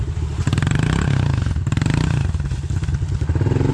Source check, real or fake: real